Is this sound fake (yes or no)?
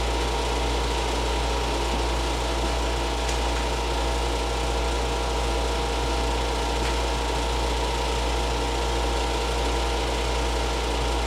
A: no